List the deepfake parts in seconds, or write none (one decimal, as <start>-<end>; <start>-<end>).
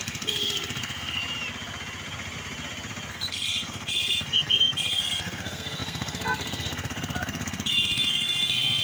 0.0-1.2; 3.1-8.8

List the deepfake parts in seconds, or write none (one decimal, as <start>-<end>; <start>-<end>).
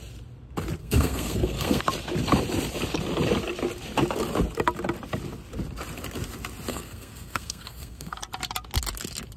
0.8-1.8; 6.7-8.2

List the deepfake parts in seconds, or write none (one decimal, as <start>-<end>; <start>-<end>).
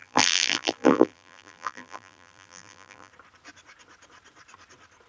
0.0-3.1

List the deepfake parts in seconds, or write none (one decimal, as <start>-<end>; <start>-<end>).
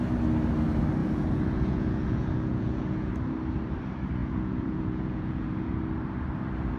1.0-3.1; 4.2-5.7